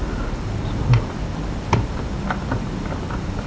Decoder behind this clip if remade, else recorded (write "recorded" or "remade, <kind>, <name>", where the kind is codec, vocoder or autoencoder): remade, vocoder, BigVGAN v2